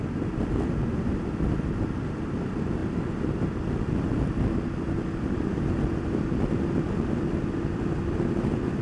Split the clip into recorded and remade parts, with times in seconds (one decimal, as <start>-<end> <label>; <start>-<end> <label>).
0.0-8.8 recorded